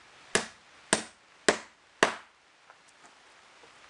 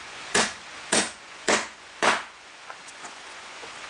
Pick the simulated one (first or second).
second